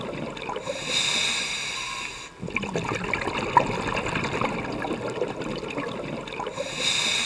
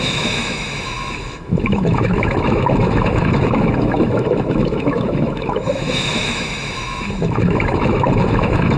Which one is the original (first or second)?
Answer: first